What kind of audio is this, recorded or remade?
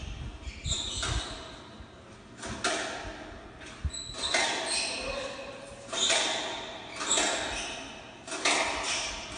recorded